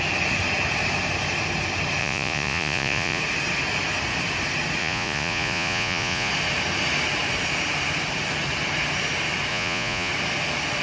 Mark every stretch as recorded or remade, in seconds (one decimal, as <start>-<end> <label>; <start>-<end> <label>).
0.0-2.0 recorded; 2.0-3.2 remade; 3.2-4.8 recorded; 4.8-6.3 remade; 6.3-9.5 recorded; 9.5-10.1 remade; 10.1-10.8 recorded